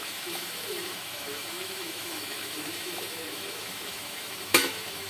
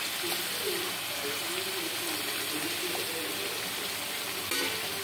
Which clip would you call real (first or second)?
second